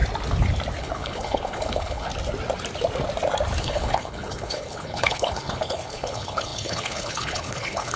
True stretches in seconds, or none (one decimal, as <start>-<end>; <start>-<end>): 0.0-0.8; 2.1-3.6